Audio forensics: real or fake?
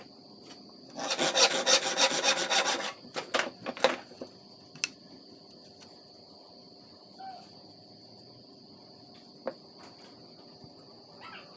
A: real